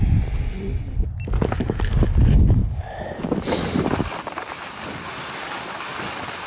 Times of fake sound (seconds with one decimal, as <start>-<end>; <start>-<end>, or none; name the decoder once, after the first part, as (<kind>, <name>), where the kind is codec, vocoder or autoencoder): none